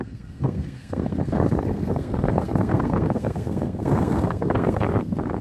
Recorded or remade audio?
remade